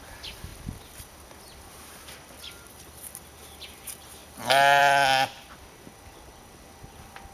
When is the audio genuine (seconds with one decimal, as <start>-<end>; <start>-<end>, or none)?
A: 0.0-7.3